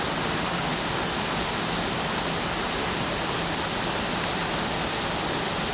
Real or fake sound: real